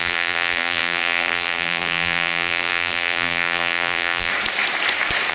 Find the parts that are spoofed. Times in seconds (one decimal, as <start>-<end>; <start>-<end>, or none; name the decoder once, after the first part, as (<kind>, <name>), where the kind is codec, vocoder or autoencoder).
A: 0.0-4.3 (vocoder, BigVGAN v2)